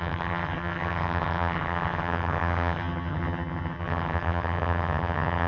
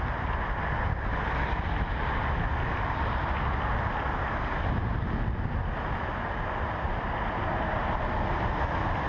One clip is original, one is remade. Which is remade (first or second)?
first